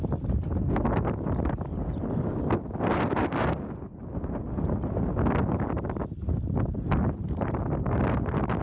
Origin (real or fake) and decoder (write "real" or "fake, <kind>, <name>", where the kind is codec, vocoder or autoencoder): real